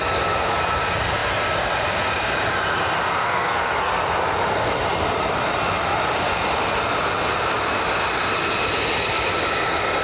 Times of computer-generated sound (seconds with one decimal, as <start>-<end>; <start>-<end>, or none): 3.2-3.9